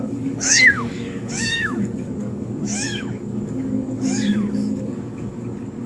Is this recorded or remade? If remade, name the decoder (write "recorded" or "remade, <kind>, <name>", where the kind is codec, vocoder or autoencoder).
remade, codec, DAC